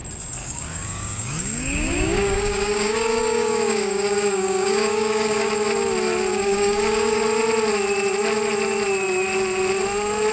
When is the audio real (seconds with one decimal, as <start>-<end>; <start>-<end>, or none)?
0.0-0.4; 5.5-6.3; 7.2-10.3